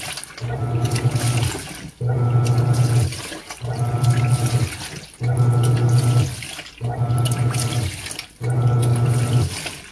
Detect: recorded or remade recorded